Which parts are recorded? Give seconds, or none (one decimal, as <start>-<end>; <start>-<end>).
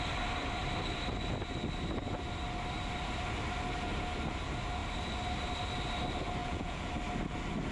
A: 0.0-6.4; 6.9-7.7